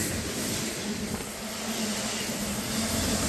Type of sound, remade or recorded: recorded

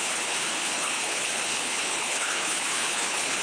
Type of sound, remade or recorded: remade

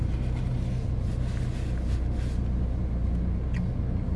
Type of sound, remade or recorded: recorded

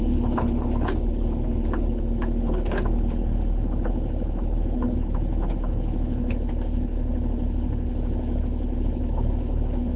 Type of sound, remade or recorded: remade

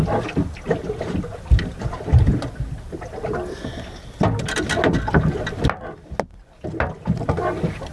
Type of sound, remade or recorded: recorded